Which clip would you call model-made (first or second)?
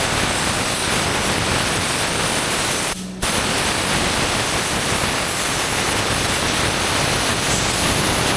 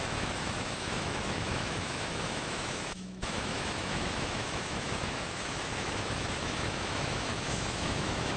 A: second